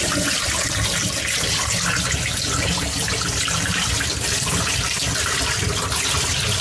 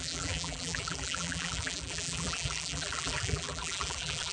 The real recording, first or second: first